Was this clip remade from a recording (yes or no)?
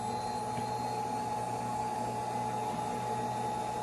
no